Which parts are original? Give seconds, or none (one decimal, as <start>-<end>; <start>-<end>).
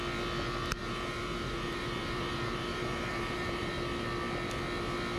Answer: 0.0-0.8; 3.7-5.2